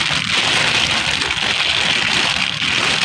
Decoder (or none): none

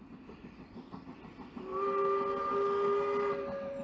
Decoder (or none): none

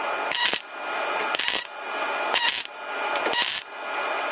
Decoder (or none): none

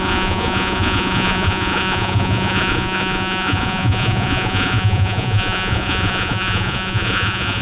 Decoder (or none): vocoder, Vocos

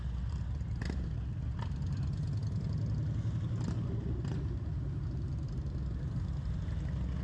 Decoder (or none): none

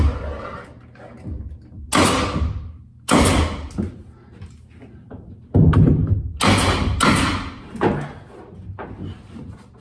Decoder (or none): none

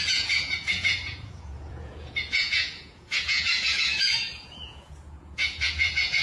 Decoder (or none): vocoder, Vocos